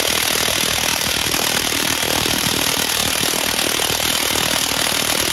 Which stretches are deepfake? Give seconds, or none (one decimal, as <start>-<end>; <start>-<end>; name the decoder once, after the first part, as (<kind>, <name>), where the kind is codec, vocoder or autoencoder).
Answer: 0.9-2.6 (vocoder, BigVGAN v2)